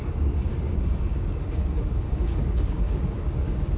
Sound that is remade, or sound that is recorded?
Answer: remade